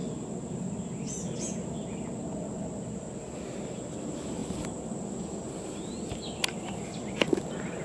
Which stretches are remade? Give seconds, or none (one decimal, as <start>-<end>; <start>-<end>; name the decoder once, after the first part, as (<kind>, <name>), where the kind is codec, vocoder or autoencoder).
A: none